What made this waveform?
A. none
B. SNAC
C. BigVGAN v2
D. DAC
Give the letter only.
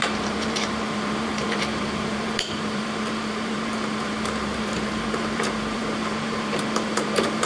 C